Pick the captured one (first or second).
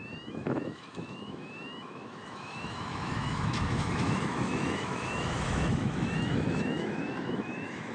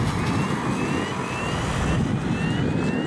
second